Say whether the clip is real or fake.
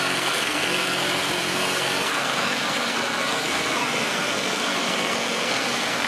fake